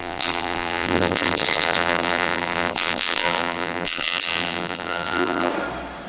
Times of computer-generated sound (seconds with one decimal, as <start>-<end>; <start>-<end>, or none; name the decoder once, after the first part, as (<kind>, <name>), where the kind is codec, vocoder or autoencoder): 0.0-5.5 (vocoder, BigVGAN v2)